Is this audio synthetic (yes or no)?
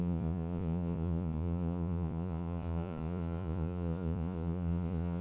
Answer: yes